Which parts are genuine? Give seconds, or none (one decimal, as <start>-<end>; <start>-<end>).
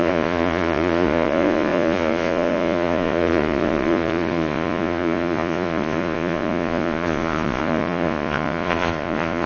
none